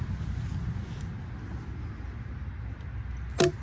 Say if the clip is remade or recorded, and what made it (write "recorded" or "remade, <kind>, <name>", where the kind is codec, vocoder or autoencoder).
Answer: recorded